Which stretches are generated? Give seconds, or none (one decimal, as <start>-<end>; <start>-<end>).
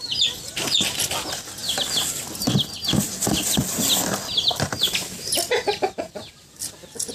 none